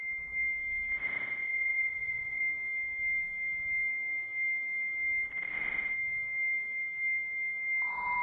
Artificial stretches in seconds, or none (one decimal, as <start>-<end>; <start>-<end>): 1.4-2.4

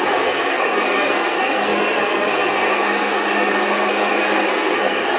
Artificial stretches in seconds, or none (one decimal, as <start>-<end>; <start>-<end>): 0.0-5.2

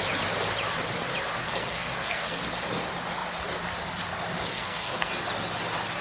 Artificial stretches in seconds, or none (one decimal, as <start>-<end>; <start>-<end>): 1.4-2.4; 4.5-5.1

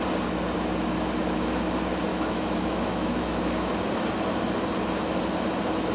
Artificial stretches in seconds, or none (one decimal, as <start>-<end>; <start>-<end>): 2.1-3.7

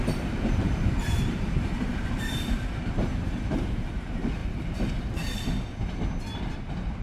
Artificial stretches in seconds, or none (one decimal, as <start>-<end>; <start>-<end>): 0.0-4.4; 6.6-7.0

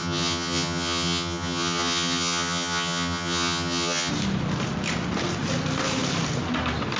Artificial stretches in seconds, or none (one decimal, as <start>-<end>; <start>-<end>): 0.0-4.1

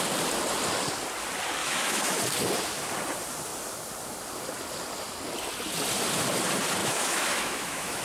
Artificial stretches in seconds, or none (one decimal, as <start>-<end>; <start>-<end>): 1.6-2.2; 6.8-8.0